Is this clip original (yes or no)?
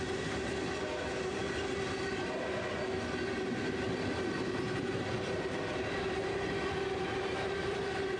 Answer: yes